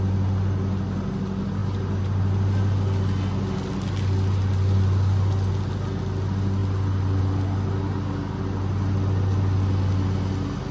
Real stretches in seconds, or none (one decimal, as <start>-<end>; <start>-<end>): 0.0-10.7